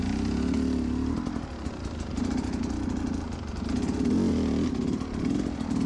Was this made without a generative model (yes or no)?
yes